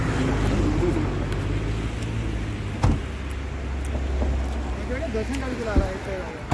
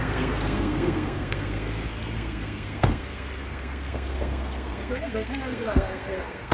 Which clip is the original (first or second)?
first